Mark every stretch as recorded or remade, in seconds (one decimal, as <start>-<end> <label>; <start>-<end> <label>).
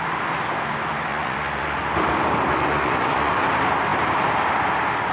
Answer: 0.0-1.1 recorded; 1.1-1.8 remade; 1.8-2.5 recorded; 2.5-3.3 remade; 3.3-5.1 recorded